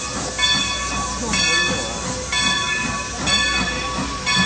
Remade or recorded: recorded